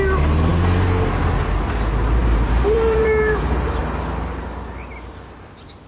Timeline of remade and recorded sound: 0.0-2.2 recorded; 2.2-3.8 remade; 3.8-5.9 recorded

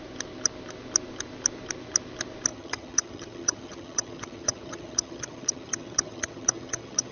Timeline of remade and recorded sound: 0.0-2.5 recorded; 2.5-7.1 remade

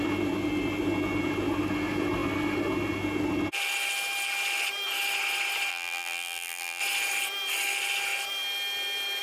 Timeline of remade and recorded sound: 0.0-5.7 recorded; 5.7-6.8 remade; 6.8-9.2 recorded

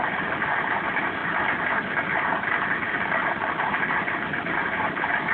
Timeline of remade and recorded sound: 0.0-1.2 remade; 1.2-4.4 recorded; 4.4-5.3 remade

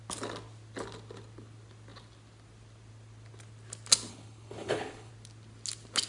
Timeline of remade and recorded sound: 0.0-4.1 recorded; 4.1-5.1 remade; 5.1-6.1 recorded